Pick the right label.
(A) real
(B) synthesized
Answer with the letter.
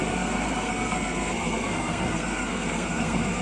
B